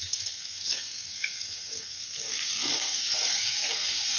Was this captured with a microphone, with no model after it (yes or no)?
no